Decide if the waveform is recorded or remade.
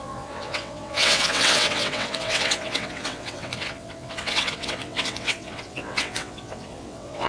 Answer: remade